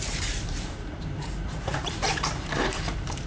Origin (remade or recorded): remade